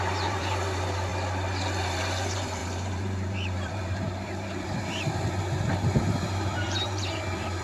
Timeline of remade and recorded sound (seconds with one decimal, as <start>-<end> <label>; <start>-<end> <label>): 0.0-1.1 remade; 1.1-1.8 recorded; 1.8-7.6 remade